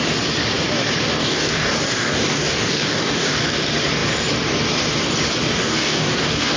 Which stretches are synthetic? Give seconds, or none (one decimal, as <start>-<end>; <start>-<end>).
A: 1.2-3.4; 5.6-6.6